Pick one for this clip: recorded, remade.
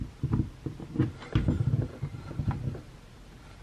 recorded